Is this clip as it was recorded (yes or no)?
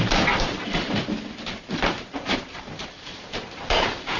no